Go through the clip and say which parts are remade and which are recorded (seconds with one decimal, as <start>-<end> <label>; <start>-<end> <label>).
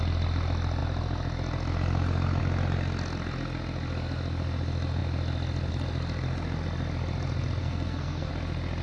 0.0-7.6 recorded; 7.6-8.3 remade; 8.3-8.8 recorded